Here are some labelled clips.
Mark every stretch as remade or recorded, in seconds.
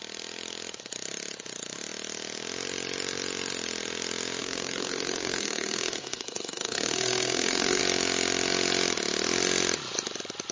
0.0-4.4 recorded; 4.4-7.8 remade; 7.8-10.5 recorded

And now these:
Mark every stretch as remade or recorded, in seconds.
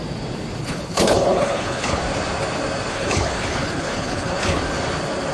0.0-0.6 recorded; 0.6-2.0 remade; 2.0-2.9 recorded; 2.9-4.6 remade; 4.6-5.3 recorded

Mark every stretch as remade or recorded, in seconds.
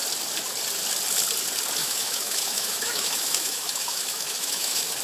0.0-1.8 recorded; 1.8-5.0 remade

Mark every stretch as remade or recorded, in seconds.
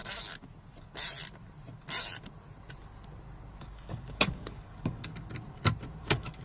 0.0-3.6 recorded; 3.6-5.1 remade; 5.1-6.0 recorded; 6.0-6.4 remade